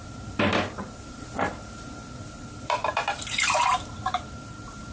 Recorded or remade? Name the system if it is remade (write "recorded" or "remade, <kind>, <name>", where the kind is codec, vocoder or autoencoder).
remade, vocoder, BigVGAN v2